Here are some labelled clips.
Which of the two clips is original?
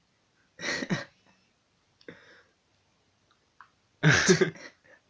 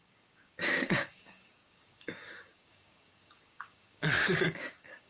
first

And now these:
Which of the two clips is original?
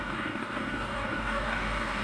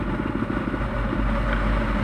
second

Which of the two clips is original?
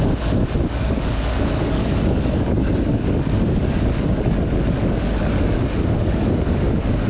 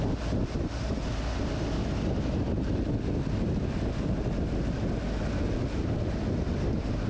second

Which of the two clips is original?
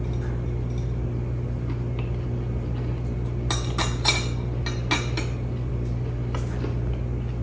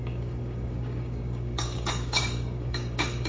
first